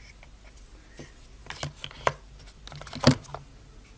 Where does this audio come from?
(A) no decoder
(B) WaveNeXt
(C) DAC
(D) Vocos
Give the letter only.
A